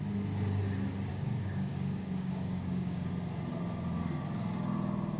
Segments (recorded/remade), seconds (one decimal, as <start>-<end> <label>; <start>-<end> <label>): 0.0-1.1 recorded; 1.1-3.1 remade; 3.1-5.2 recorded